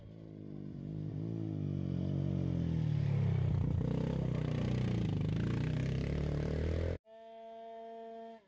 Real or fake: real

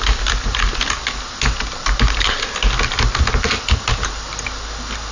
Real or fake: real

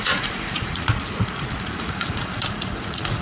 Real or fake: fake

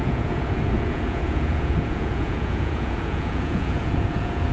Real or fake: fake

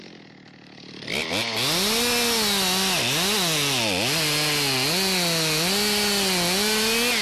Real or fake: real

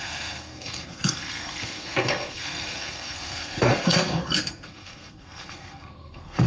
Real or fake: fake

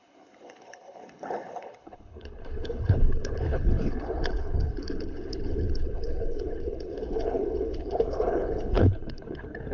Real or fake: fake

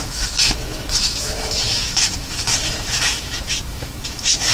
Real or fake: fake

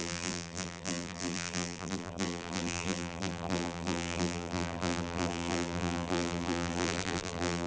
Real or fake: fake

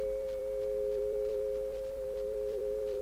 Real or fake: fake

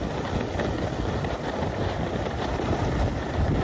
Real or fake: real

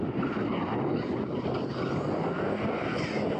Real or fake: real